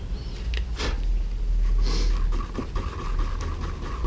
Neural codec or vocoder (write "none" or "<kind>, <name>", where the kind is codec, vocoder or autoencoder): none